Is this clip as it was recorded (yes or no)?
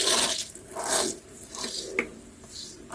yes